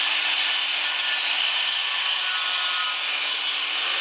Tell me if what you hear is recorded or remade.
recorded